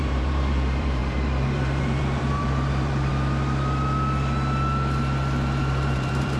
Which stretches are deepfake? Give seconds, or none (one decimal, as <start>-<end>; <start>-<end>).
0.0-3.1; 5.6-6.4